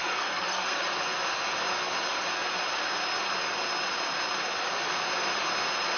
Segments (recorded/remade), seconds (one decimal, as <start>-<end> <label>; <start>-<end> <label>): 0.0-0.8 remade; 0.8-6.0 recorded